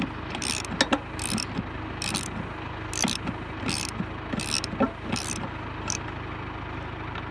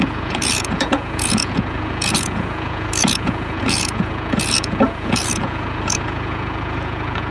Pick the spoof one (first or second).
second